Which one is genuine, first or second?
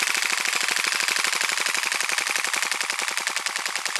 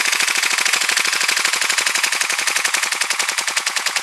first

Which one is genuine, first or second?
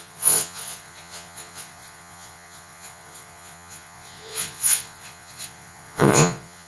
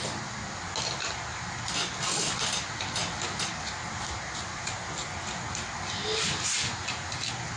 second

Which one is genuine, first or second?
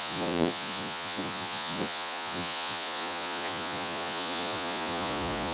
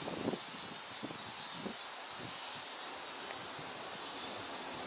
second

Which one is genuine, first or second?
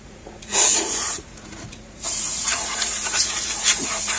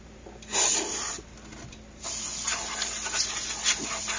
second